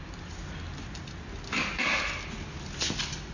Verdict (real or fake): real